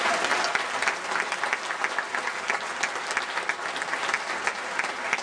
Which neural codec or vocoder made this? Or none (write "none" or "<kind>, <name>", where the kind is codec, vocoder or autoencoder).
none